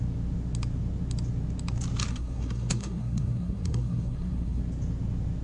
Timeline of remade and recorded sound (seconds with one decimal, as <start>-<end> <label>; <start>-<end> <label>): 0.0-2.1 recorded; 2.1-4.6 remade; 4.6-5.4 recorded